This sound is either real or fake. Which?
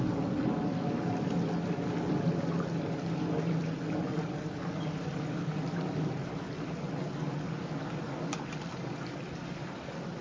real